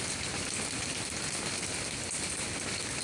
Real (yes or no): yes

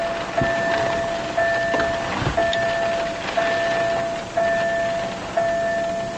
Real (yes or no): yes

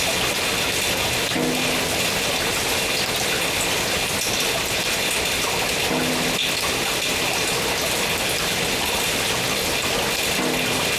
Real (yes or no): yes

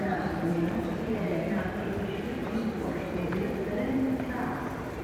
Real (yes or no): no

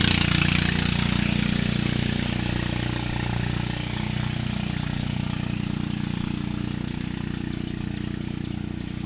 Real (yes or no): yes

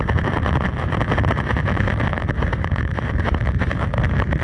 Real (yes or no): no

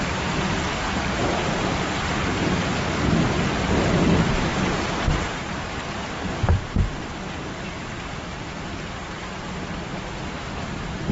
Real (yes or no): no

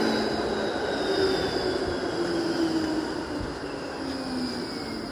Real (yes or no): yes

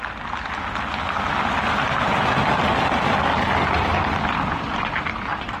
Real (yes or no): yes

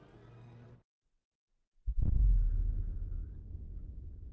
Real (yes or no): yes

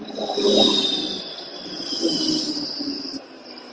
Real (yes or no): yes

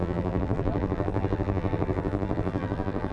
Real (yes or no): no